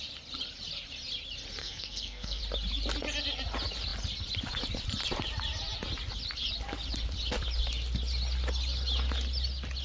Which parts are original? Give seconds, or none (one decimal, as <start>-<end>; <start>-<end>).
0.0-1.6; 2.4-9.8